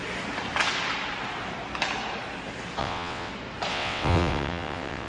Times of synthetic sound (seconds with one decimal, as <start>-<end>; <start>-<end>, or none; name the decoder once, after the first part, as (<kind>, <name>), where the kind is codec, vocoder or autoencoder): 2.8-3.3 (vocoder, WaveNeXt); 3.7-5.1